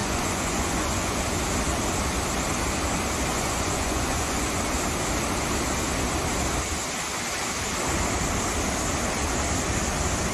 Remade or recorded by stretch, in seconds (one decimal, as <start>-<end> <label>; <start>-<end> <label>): 0.0-1.2 remade; 1.2-3.3 recorded; 3.3-4.6 remade; 4.6-10.3 recorded